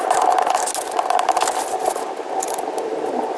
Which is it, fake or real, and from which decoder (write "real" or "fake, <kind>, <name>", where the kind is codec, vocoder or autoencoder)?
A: real